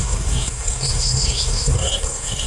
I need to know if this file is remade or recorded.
remade